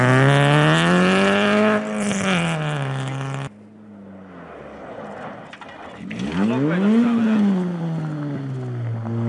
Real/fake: real